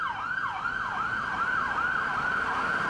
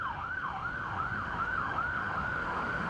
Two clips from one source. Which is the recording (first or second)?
first